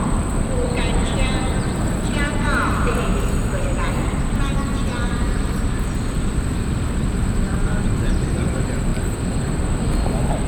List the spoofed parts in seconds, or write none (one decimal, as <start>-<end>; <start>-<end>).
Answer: 0.0-3.1; 4.2-4.8; 6.1-8.9; 9.6-10.5

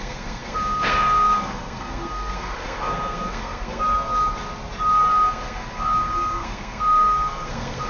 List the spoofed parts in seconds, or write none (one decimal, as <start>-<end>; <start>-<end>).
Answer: 0.0-3.8; 5.1-7.9

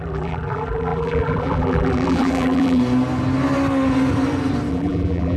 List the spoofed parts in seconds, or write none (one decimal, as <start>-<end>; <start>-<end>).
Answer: 0.0-2.8; 4.7-5.4

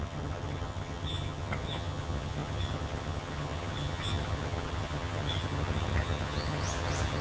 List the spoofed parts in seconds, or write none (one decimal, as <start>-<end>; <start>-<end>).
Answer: 0.0-7.2